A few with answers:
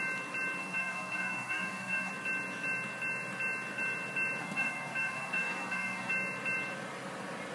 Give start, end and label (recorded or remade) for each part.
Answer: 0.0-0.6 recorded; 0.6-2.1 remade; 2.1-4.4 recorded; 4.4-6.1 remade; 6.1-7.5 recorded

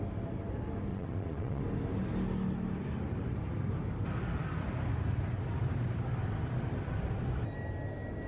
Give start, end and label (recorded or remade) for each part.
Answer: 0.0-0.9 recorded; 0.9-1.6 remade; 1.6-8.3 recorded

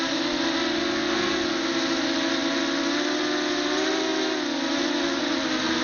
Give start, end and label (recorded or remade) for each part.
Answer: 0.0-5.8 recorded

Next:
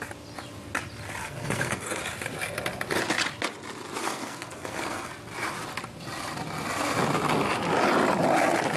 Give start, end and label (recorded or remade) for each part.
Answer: 0.0-1.2 recorded; 1.2-2.0 remade; 2.0-4.0 recorded; 4.0-5.1 remade; 5.1-8.8 recorded

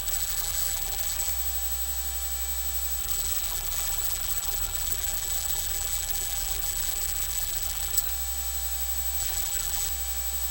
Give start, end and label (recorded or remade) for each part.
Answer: 0.0-1.3 remade; 1.3-3.0 recorded; 3.0-8.1 remade; 8.1-9.2 recorded; 9.2-9.9 remade; 9.9-10.5 recorded

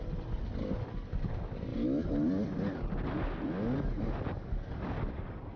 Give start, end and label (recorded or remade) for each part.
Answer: 0.0-5.6 recorded

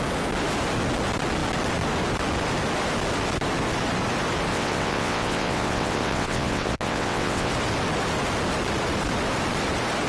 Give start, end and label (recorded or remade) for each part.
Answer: 0.0-4.5 recorded; 4.5-7.5 remade; 7.5-10.1 recorded

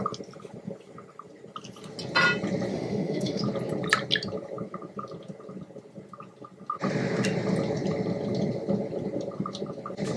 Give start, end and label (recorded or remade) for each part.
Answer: 0.0-2.7 recorded; 2.7-3.4 remade; 3.4-10.2 recorded